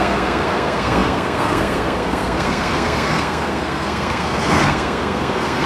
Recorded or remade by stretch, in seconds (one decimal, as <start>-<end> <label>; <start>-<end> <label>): 0.0-5.7 remade